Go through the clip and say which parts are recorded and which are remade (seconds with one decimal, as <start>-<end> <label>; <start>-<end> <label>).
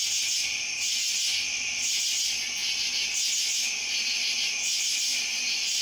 0.0-1.3 recorded; 1.3-2.0 remade; 2.0-5.1 recorded; 5.1-5.8 remade